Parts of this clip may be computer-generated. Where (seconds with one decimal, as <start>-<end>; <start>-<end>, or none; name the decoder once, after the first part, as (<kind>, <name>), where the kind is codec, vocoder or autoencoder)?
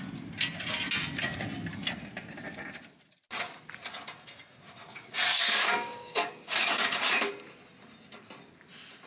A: 5.3-7.3 (codec, DAC)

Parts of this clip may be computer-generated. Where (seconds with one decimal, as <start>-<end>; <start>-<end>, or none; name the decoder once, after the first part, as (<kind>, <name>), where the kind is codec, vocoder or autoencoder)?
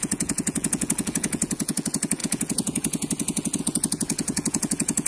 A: 0.0-5.1 (vocoder, Vocos)